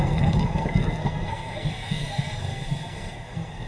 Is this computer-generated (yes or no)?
yes